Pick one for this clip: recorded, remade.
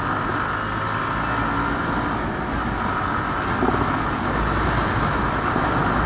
recorded